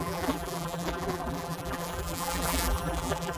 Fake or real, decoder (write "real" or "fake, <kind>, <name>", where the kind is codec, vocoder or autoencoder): fake, vocoder, BigVGAN v2